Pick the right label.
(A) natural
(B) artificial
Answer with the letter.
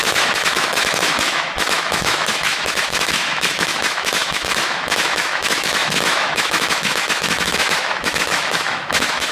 B